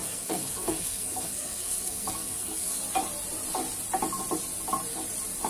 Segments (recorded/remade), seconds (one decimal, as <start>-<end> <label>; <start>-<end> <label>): 0.0-2.8 remade; 2.8-5.5 recorded